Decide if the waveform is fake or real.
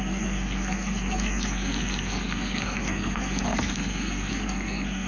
fake